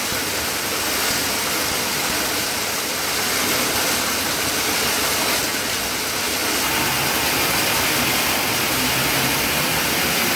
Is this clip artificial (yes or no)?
no